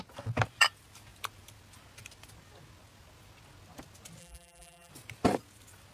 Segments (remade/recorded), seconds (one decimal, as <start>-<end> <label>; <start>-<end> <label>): 0.0-4.2 recorded; 4.2-4.9 remade; 4.9-5.9 recorded